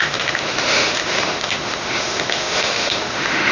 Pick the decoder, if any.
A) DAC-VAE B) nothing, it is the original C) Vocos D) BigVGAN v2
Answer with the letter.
A